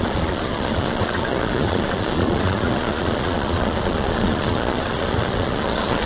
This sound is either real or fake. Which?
fake